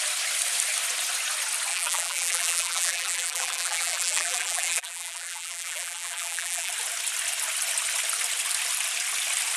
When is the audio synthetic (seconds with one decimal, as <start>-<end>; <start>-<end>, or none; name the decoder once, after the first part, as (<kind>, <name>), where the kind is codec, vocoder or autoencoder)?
1.7-6.7 (vocoder, BigVGAN v2)